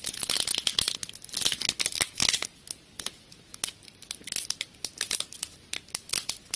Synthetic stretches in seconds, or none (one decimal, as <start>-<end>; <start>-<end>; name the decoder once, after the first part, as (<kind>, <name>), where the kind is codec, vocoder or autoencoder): none